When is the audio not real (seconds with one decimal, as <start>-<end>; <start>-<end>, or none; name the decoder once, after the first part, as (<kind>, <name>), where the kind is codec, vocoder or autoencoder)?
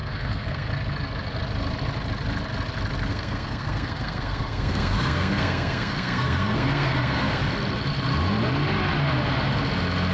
0.0-0.7 (codec, SNAC); 3.1-7.4